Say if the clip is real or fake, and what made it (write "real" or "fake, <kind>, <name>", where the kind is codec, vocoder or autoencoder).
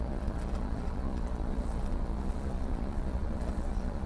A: fake, vocoder, Vocos